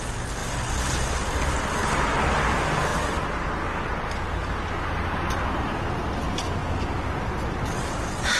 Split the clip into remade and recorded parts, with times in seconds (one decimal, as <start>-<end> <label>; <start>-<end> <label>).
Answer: 0.0-8.4 recorded